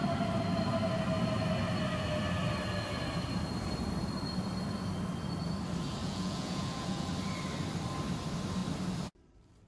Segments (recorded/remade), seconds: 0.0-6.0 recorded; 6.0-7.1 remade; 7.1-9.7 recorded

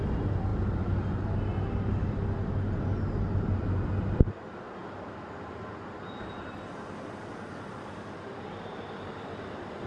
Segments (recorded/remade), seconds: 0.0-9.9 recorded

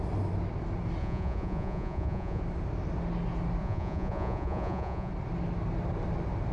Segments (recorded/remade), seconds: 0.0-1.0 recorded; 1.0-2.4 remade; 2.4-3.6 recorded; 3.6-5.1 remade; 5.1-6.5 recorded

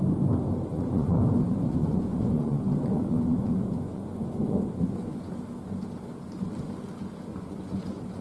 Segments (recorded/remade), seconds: 0.0-0.7 recorded; 0.7-5.2 remade; 5.2-7.3 recorded; 7.3-8.2 remade

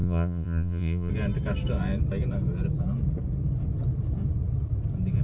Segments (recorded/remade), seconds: 0.0-1.1 remade; 1.1-5.2 recorded

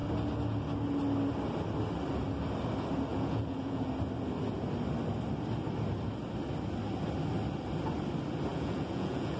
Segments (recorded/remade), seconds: 0.0-3.1 recorded; 3.1-3.9 remade; 3.9-8.5 recorded; 8.5-9.4 remade